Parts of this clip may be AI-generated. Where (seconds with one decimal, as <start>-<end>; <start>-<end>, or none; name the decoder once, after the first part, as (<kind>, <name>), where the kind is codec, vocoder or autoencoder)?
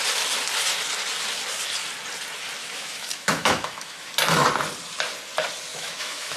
2.6-4.1 (autoencoder, DAC-VAE); 5.7-6.4